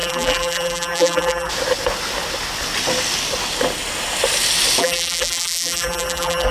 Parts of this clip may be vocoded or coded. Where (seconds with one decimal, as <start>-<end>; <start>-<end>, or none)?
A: 0.0-1.5; 4.8-6.5